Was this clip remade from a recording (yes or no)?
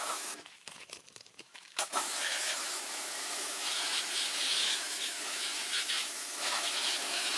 yes